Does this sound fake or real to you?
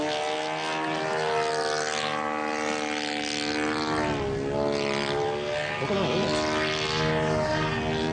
real